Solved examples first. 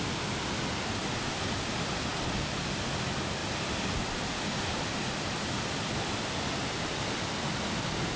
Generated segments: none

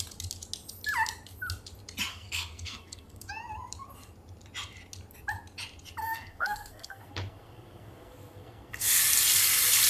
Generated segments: 2.1-3.3 (codec, SNAC); 6.0-9.0

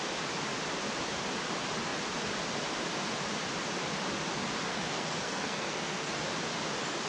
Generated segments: 4.7-6.1 (codec, SNAC)

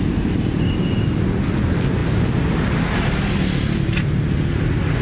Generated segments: none

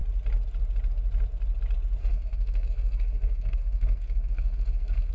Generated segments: 2.0-5.1 (codec, SNAC)

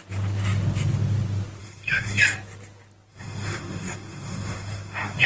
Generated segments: 1.6-2.2 (codec, SNAC); 3.1-5.3

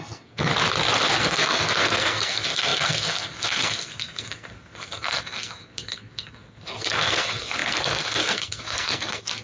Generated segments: 0.0-0.5 (codec, SNAC); 1.2-9.4

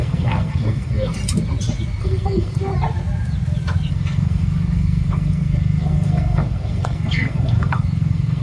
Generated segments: 0.0-1.2 (codec, SNAC); 2.0-2.7; 3.9-8.4